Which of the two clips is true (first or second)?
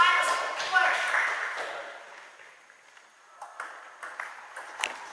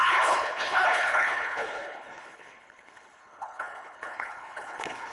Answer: first